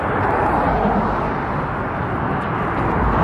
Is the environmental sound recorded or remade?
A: recorded